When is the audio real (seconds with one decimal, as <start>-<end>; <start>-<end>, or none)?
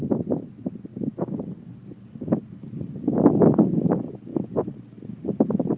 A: 0.0-5.8